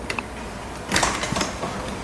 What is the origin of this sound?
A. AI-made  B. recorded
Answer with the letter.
B